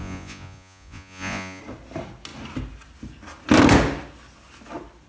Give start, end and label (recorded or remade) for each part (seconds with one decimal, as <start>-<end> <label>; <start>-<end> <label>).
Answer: 0.0-1.6 remade; 1.6-5.1 recorded